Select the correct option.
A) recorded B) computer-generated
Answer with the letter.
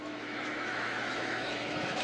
B